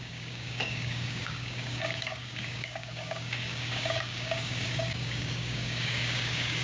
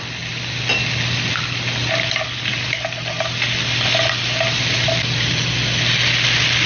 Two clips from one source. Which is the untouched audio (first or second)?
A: second